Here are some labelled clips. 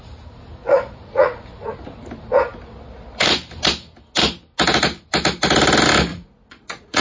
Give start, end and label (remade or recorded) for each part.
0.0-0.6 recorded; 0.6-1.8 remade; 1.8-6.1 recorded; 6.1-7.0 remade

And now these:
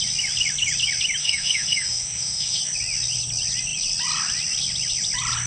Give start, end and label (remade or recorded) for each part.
0.0-1.2 recorded; 1.2-2.6 remade; 2.6-5.5 recorded